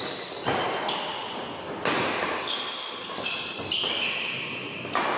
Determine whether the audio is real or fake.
real